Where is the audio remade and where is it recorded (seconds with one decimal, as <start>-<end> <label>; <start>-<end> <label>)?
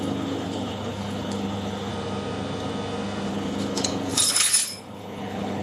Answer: 0.0-1.9 remade; 1.9-3.3 recorded; 3.3-5.6 remade